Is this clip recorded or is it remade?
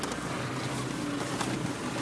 recorded